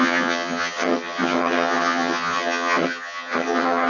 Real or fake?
fake